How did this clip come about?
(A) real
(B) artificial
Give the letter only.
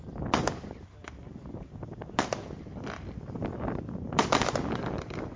A